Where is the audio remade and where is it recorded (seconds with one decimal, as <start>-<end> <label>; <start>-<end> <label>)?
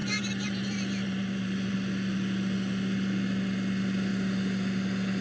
0.0-1.7 remade; 1.7-5.2 recorded